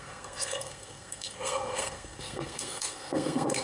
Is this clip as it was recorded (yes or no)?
no